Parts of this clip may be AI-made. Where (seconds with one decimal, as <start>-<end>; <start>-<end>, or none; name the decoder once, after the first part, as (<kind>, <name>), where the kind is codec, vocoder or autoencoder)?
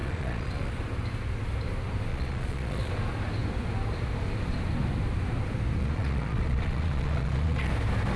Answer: 0.0-0.7 (vocoder, Vocos); 2.1-2.9; 5.8-7.7